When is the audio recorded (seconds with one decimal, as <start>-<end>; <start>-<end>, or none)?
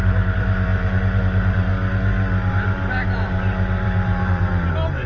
1.7-2.5